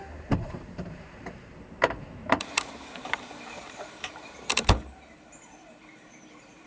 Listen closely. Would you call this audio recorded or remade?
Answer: remade